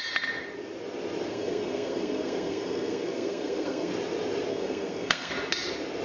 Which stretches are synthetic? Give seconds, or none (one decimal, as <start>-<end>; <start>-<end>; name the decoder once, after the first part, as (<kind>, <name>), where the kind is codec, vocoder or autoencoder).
1.3-3.9 (codec, SNAC); 4.5-5.3